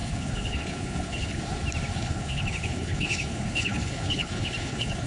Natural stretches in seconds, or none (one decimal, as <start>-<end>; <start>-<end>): 1.4-1.9

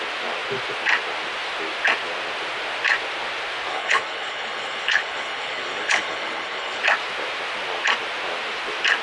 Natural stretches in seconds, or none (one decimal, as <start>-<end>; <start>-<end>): 0.0-3.7; 6.8-9.0